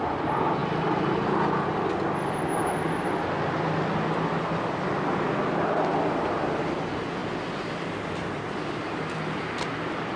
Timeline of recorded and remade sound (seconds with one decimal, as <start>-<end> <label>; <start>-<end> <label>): 0.0-10.2 recorded